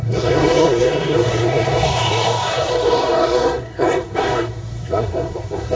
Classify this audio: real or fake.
fake